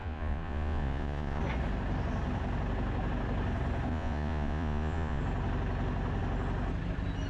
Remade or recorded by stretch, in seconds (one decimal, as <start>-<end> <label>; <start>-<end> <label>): 0.0-1.4 remade; 1.4-3.9 recorded; 3.9-5.2 remade; 5.2-7.3 recorded